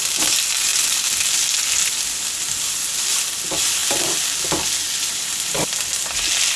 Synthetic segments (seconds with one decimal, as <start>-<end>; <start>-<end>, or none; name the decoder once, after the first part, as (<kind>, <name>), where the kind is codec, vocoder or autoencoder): none